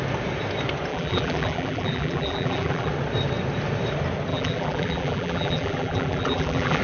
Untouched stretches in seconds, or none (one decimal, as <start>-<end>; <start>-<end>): 0.0-0.9; 2.9-4.3